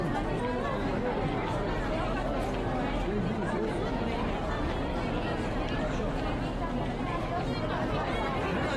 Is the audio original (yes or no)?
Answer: yes